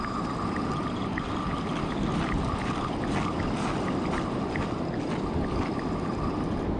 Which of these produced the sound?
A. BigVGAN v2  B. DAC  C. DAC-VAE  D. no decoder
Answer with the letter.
D